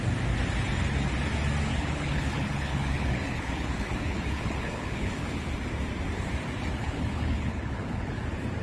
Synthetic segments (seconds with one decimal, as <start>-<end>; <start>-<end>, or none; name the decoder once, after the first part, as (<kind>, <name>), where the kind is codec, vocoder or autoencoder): 1.7-5.5 (codec, HILCodec); 6.8-8.2